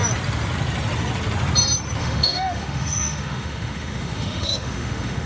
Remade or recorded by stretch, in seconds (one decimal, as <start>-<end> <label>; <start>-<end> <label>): 0.0-2.0 recorded; 2.0-5.3 remade